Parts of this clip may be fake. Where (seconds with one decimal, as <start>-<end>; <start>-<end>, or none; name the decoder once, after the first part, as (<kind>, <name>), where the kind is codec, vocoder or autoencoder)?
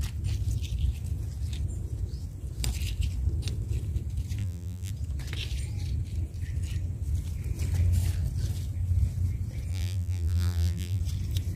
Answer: 4.4-4.9 (vocoder, BigVGAN v2); 9.7-11.0